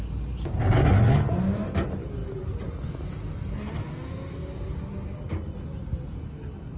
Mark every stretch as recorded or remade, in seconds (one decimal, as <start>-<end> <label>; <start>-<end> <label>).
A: 0.0-6.8 recorded